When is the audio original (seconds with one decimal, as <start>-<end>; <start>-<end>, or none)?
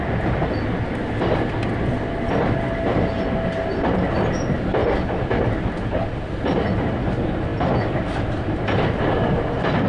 0.0-9.9